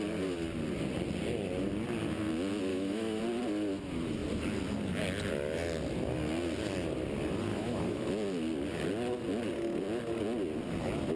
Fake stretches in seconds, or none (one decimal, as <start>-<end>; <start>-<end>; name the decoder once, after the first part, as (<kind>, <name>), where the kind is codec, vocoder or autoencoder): 2.7-3.2 (autoencoder, DAC-VAE); 7.5-8.1